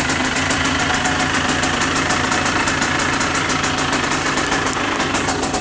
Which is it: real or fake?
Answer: fake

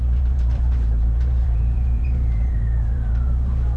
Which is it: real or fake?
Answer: fake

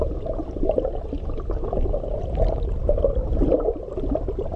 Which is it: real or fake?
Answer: real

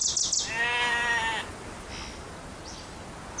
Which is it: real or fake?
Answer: real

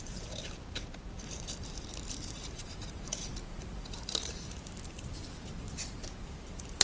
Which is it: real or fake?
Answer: fake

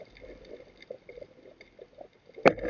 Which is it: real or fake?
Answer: real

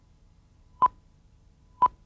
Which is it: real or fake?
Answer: fake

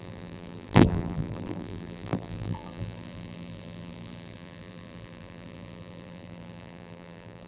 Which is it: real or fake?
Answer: fake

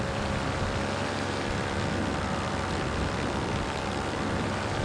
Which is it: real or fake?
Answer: fake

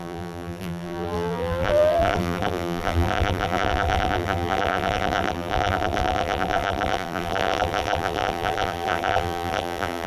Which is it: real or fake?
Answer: fake